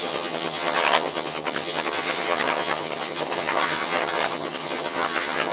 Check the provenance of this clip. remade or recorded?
remade